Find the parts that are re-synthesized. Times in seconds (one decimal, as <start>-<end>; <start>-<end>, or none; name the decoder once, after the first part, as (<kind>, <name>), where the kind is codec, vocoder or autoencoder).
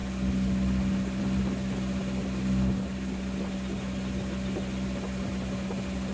none